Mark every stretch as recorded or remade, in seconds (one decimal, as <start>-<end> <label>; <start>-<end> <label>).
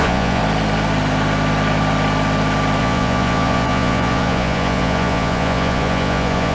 0.0-0.4 remade; 0.4-2.8 recorded; 2.8-6.5 remade